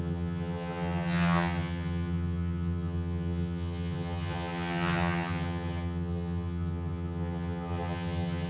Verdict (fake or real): fake